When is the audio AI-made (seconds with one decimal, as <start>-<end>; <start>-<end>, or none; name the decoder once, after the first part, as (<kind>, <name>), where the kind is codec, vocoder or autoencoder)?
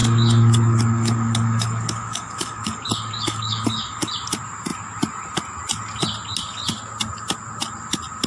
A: 0.0-4.1 (codec, DAC)